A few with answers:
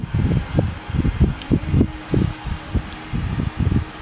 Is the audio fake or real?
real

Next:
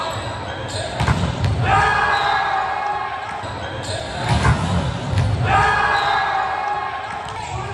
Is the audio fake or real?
real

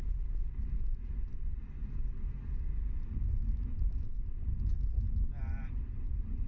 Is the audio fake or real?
real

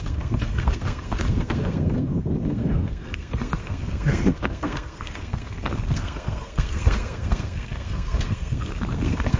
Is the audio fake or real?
fake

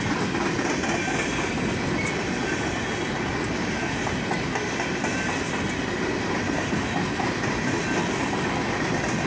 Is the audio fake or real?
real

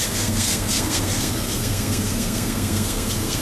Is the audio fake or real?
fake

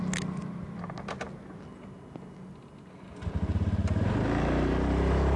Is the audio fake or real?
real